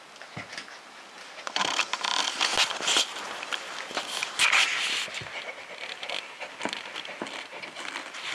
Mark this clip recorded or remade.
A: recorded